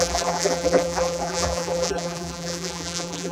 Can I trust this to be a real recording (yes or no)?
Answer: no